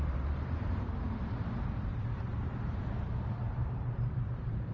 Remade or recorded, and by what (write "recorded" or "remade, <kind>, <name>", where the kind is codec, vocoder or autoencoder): remade, vocoder, BigVGAN v2